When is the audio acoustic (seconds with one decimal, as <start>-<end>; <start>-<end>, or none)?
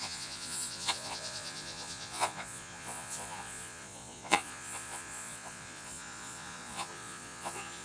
none